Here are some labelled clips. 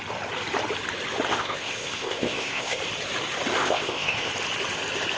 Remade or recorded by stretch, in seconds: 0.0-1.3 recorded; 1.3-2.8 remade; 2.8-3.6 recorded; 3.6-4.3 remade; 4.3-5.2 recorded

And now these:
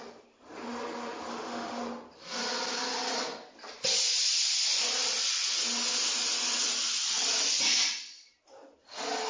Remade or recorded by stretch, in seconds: 0.0-1.3 recorded; 1.3-1.8 remade; 1.8-9.3 recorded